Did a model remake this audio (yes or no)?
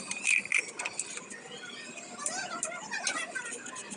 no